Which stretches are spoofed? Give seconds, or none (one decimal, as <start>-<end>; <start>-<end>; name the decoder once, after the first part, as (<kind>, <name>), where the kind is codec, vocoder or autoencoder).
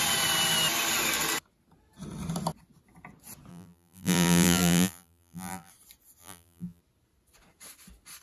3.5-5.7 (vocoder, BigVGAN v2); 6.2-6.8